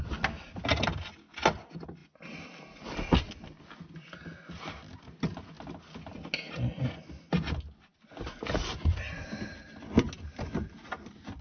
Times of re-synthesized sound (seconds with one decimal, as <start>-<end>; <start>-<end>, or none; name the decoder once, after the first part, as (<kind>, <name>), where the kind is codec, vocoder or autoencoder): none